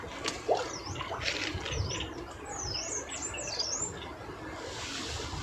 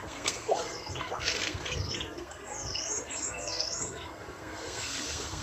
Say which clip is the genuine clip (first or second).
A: first